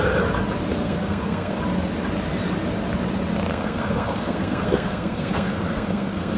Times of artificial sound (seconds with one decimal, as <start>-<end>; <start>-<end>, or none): 0.8-1.6; 3.5-6.4